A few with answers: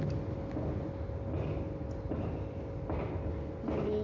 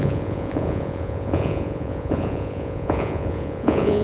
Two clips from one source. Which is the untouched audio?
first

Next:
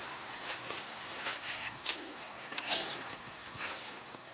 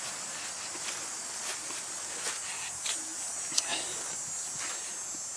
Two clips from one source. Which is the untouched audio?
second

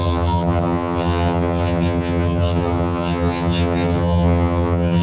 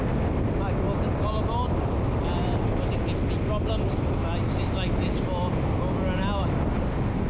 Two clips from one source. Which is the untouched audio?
second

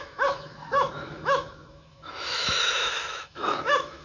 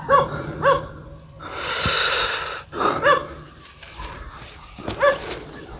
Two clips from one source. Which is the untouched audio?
second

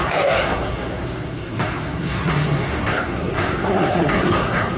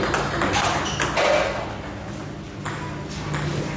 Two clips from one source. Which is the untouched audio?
second